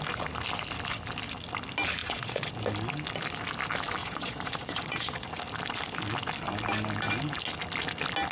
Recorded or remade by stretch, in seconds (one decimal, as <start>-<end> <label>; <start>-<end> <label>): 0.0-2.0 recorded; 2.0-2.5 remade; 2.5-4.0 recorded; 4.0-5.3 remade; 5.3-8.3 recorded